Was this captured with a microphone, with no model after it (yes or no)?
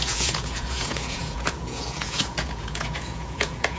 no